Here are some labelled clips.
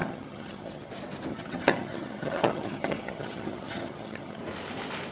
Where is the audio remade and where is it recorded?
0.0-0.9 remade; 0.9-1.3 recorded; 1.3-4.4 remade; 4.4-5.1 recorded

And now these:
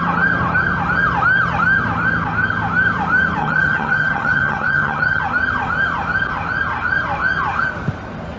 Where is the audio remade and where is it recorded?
0.0-3.4 recorded; 3.4-5.2 remade; 5.2-8.4 recorded

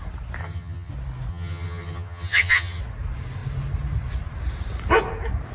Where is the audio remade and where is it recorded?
0.0-0.4 recorded; 0.4-0.9 remade; 0.9-1.3 recorded; 1.3-2.8 remade; 2.8-5.5 recorded

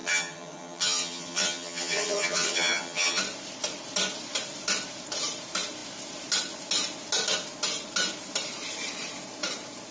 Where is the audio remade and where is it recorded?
0.0-3.2 remade; 3.2-9.9 recorded

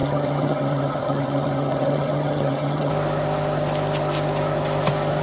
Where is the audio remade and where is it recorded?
0.0-2.9 remade; 2.9-5.2 recorded